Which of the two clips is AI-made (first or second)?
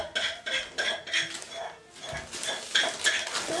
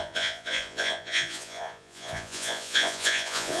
second